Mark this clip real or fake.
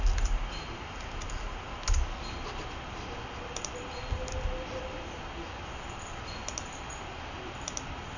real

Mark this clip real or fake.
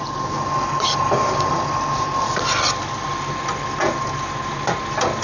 real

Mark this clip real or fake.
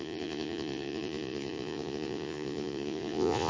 fake